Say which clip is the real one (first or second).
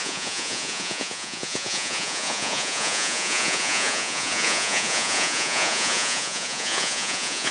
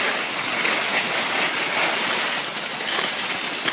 second